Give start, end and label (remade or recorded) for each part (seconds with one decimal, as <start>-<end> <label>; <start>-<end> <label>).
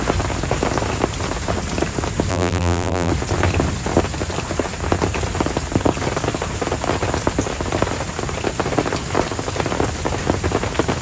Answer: 0.0-2.3 recorded; 2.3-3.1 remade; 3.1-11.0 recorded